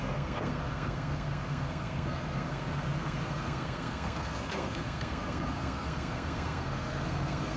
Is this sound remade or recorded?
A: remade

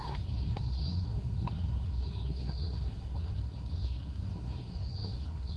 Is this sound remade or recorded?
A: remade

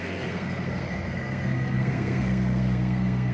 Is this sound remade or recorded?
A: remade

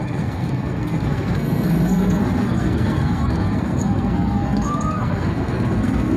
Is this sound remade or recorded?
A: remade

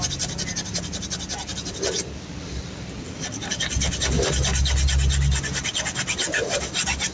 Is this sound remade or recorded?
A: recorded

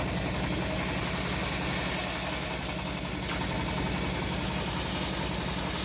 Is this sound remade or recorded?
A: recorded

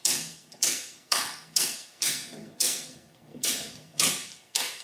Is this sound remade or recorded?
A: remade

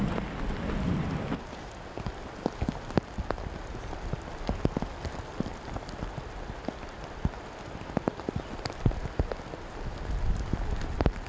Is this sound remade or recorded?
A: recorded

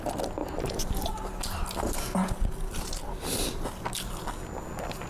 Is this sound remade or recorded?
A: recorded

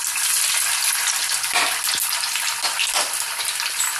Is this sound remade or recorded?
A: recorded